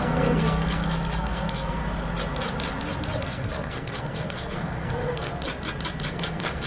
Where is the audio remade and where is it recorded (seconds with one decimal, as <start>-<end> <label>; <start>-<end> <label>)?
0.0-1.8 remade; 1.8-3.2 recorded; 3.2-5.3 remade; 5.3-6.1 recorded; 6.1-6.7 remade